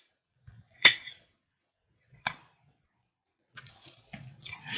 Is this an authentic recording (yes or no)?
no